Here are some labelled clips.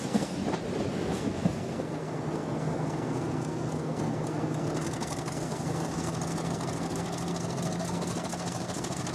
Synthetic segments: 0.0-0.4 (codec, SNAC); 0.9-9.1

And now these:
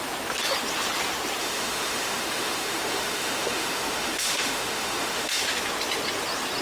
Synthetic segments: 1.4-5.4 (autoencoder, DAC-VAE)

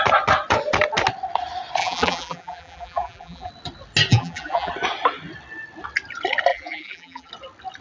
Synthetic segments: 1.8-3.5 (vocoder, BigVGAN v2); 4.1-4.7; 6.5-7.3

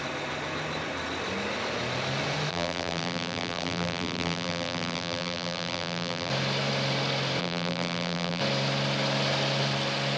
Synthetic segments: 2.5-6.3 (vocoder, BigVGAN v2); 7.4-8.4

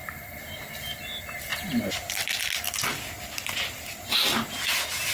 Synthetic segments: 0.0-1.0 (vocoder, BigVGAN v2); 1.5-2.1

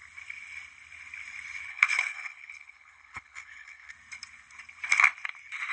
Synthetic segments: 1.7-3.9 (codec, HILCodec)

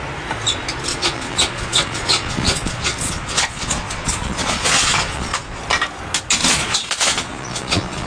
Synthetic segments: 0.9-5.6 (vocoder, Vocos); 6.4-8.1

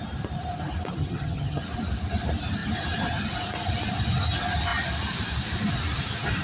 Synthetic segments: 1.0-1.6 (vocoder, HiFi-GAN)